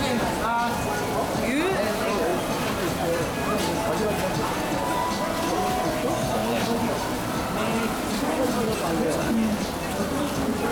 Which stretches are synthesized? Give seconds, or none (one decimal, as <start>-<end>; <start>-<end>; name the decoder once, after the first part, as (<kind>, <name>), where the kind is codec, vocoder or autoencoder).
6.4-6.9 (vocoder, BigVGAN v2)